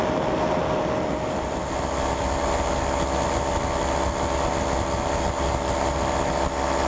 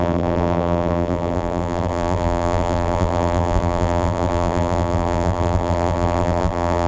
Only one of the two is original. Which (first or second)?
first